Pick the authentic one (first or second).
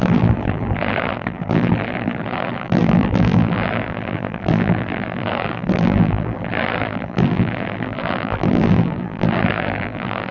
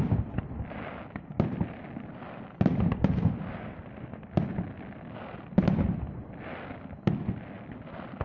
second